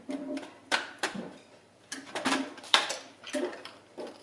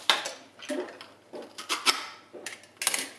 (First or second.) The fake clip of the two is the first